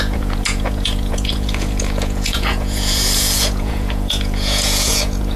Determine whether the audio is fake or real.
fake